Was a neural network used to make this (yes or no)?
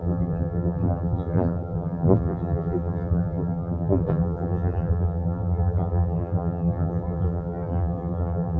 yes